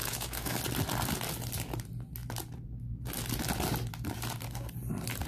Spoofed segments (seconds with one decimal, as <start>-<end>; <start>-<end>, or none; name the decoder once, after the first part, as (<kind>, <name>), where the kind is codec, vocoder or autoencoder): 0.0-0.6 (autoencoder, DAC-VAE)